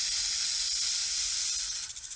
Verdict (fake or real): real